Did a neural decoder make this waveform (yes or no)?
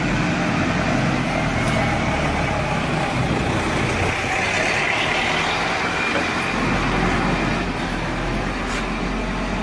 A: no